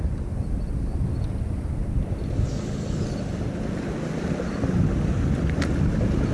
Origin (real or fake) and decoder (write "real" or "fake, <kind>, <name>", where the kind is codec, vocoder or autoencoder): real